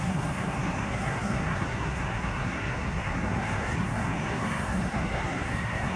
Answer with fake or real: fake